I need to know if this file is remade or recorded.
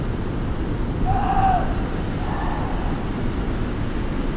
recorded